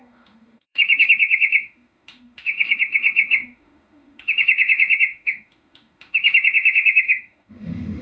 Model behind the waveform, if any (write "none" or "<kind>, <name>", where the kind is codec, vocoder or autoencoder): autoencoder, DAC-VAE